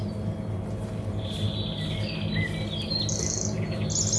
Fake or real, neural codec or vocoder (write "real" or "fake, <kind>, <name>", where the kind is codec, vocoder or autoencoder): real